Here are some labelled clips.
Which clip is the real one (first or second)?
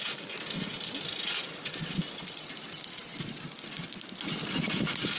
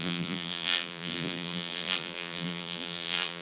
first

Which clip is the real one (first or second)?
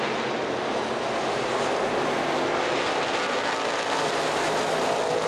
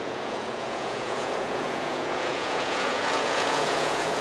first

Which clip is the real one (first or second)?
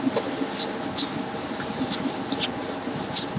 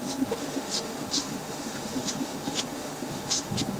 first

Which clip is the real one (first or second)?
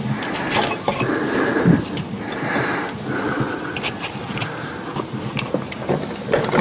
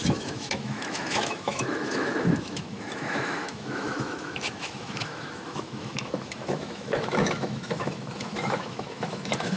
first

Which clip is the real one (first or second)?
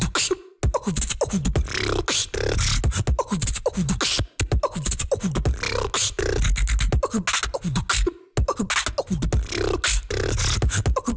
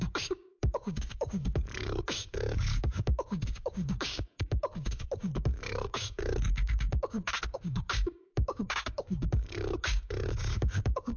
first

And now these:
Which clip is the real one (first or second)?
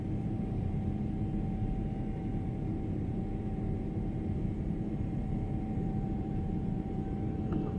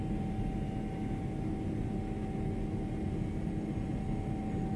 second